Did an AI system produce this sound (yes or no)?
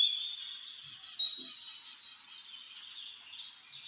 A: no